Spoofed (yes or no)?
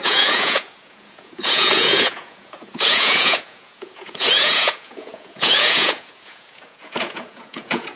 yes